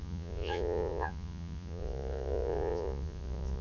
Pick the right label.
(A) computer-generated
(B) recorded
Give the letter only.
A